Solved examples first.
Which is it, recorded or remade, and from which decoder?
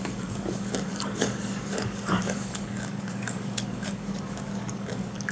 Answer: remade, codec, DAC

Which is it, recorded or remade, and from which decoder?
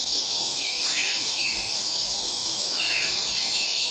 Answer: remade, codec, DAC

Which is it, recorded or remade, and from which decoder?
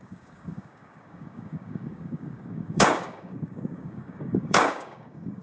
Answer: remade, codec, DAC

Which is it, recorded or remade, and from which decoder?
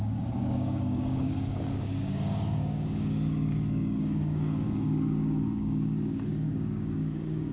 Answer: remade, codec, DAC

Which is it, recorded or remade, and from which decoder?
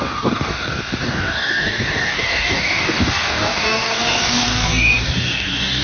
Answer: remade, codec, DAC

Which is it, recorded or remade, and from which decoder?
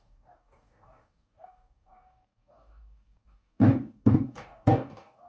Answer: remade, codec, DAC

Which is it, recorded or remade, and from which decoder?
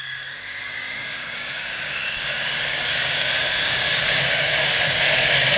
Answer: remade, codec, DAC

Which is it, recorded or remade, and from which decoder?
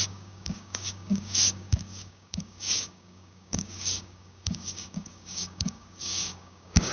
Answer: remade, codec, DAC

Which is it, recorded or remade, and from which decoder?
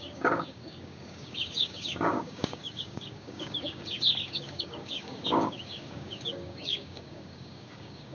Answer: remade, codec, DAC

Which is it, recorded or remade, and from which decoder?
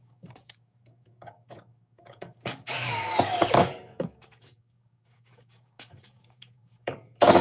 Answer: remade, codec, DAC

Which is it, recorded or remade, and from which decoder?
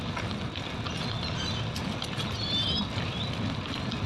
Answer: recorded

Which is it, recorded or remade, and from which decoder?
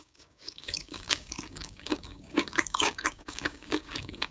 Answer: remade, codec, DAC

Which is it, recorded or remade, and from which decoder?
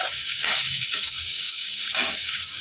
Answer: remade, codec, DAC